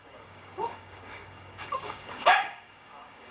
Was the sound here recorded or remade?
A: remade